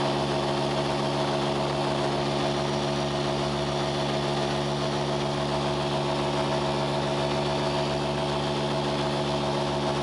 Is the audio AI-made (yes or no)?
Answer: no